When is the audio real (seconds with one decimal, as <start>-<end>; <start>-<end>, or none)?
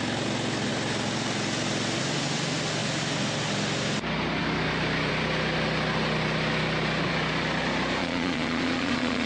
0.0-8.0